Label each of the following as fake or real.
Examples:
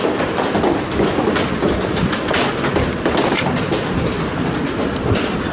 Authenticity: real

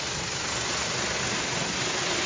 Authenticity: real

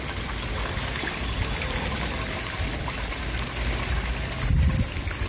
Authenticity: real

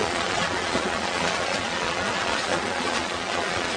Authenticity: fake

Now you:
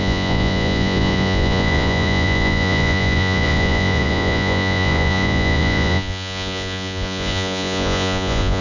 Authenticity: fake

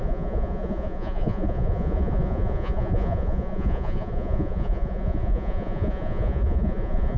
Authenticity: fake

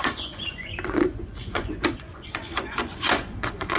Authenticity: fake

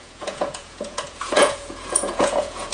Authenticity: fake